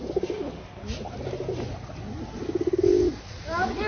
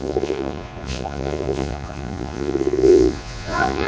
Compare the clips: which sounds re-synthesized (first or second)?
second